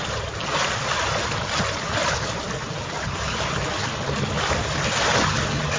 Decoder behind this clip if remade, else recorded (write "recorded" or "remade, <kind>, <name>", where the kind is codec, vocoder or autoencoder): recorded